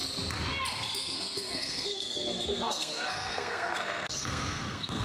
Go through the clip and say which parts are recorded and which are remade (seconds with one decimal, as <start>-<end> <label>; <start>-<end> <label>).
0.0-0.9 recorded; 0.9-5.0 remade